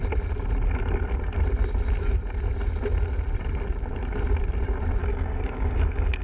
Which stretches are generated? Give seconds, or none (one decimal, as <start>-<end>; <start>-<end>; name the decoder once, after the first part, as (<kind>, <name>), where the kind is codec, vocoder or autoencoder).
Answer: 5.0-6.2 (codec, DAC)